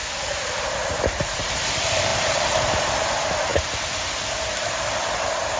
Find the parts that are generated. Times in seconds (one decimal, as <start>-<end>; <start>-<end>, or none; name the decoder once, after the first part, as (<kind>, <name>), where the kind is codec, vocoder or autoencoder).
0.0-3.5 (vocoder, BigVGAN v2); 4.4-5.6

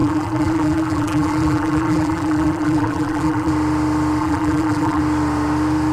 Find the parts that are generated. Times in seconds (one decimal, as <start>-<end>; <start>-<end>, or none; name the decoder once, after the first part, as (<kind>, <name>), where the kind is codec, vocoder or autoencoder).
0.0-3.5 (vocoder, BigVGAN v2); 4.2-5.0

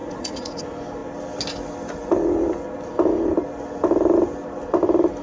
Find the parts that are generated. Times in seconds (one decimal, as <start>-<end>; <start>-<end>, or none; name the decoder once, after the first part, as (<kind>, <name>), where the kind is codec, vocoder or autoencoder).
0.0-0.6 (vocoder, Vocos)

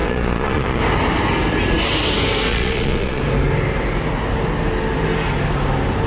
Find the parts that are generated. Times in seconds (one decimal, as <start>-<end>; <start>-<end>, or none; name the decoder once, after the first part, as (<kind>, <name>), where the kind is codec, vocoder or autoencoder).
0.0-0.8 (vocoder, Vocos); 2.5-3.2

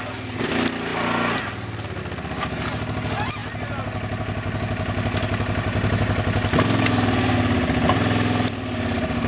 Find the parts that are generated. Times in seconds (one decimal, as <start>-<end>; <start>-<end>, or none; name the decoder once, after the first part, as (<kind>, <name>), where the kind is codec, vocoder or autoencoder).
none

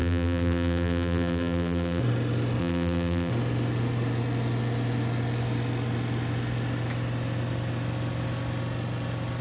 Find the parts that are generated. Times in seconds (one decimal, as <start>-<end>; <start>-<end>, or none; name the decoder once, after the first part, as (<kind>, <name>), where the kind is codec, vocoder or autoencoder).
0.0-2.0 (vocoder, BigVGAN v2); 2.6-3.3

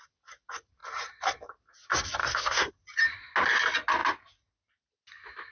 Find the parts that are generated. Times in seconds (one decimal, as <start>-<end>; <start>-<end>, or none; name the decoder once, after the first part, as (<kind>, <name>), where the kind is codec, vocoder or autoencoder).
2.2-2.7 (codec, SNAC)